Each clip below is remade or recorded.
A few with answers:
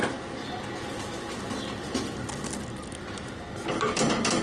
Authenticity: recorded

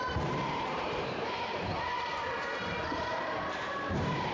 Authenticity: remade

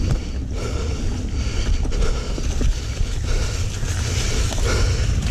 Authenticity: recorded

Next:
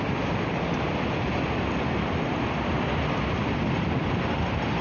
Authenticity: recorded